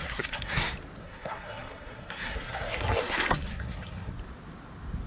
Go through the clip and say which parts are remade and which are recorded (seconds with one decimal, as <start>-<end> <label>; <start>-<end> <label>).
0.0-0.6 remade; 0.6-1.0 recorded; 1.0-4.1 remade; 4.1-5.1 recorded